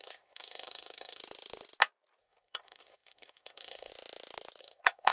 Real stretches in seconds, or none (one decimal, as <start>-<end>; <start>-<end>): 1.2-2.2; 3.9-4.6